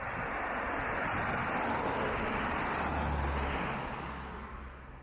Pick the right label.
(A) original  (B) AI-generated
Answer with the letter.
A